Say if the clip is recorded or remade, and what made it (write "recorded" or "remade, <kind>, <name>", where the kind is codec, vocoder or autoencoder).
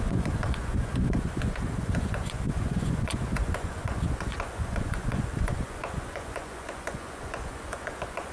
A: remade, vocoder, Vocos